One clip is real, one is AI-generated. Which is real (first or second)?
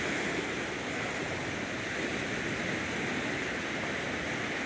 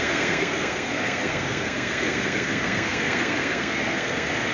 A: first